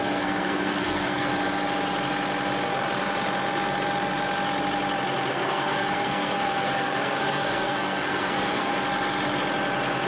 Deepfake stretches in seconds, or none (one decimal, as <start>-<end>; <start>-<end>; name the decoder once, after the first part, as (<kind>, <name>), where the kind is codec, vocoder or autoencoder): 0.0-1.3 (codec, SNAC); 5.3-8.7